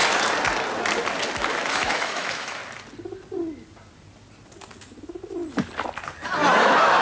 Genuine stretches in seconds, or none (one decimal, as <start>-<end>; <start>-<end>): 0.0-1.7; 2.6-6.6